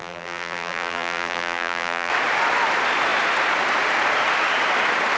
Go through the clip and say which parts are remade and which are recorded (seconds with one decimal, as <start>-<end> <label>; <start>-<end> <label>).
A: 0.0-2.1 remade; 2.1-5.2 recorded